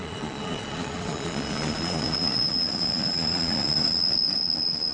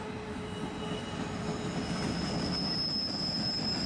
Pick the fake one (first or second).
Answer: first